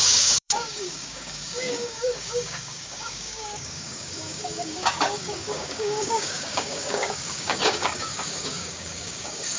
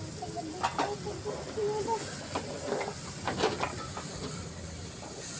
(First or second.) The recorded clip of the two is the second